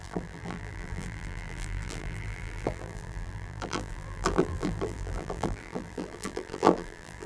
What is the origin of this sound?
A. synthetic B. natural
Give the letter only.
A